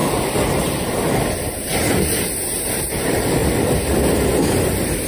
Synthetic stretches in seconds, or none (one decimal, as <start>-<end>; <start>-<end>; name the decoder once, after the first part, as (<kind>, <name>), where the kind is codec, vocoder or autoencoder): none